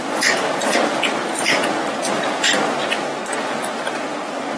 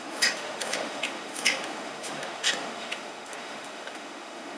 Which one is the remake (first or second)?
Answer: second